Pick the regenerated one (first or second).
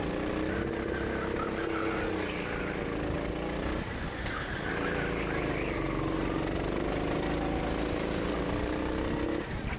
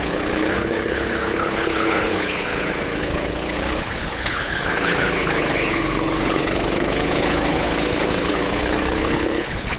second